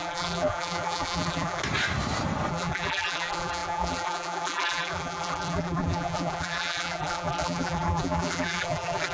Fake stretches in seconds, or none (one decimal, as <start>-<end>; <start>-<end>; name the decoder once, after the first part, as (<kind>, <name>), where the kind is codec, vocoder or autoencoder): 0.0-1.6 (vocoder, BigVGAN v2); 2.5-9.1